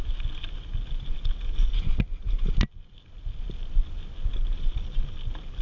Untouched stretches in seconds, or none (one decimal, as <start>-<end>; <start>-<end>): 0.0-5.6